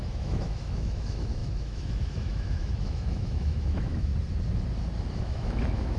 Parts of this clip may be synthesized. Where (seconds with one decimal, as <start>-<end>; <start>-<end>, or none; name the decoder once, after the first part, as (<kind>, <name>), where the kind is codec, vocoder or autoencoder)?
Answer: 0.0-4.1 (autoencoder, DAC-VAE); 5.2-6.0